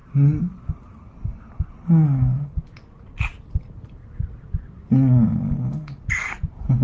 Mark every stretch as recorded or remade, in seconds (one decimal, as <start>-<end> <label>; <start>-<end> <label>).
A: 0.0-6.8 recorded